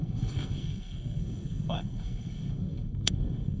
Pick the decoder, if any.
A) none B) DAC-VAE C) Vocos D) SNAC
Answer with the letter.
D